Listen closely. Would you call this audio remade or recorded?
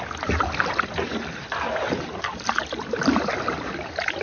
recorded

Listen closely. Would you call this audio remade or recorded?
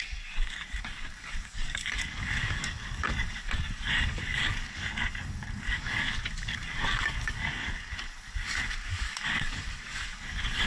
remade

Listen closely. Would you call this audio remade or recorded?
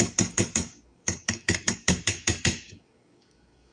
remade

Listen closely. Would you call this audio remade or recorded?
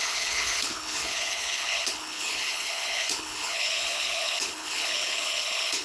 remade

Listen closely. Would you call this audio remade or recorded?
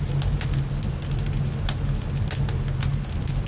recorded